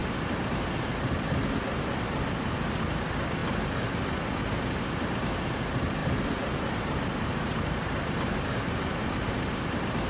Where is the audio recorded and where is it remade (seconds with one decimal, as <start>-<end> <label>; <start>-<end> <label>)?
0.0-6.0 recorded; 6.0-9.3 remade; 9.3-10.1 recorded

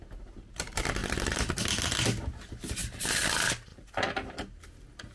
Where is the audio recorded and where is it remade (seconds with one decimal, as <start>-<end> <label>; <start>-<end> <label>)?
0.0-1.0 recorded; 1.0-1.7 remade; 1.7-2.8 recorded; 2.8-3.3 remade; 3.3-5.1 recorded

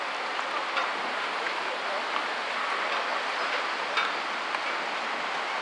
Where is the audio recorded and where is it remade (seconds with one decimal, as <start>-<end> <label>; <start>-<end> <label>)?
0.0-3.1 recorded; 3.1-3.9 remade; 3.9-5.6 recorded